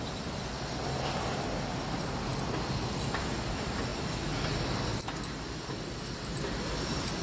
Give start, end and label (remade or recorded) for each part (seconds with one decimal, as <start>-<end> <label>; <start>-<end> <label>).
0.0-7.2 recorded